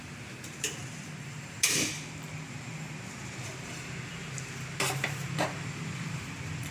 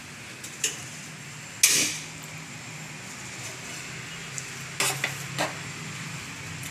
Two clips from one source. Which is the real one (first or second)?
second